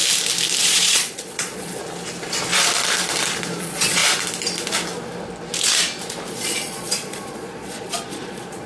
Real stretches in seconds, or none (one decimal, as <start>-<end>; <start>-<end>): 0.0-0.6; 1.8-3.6; 4.0-6.3